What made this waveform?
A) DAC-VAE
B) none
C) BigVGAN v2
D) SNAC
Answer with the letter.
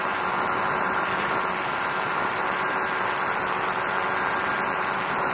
C